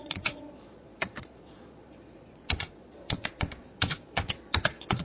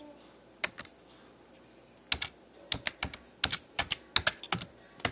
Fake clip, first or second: first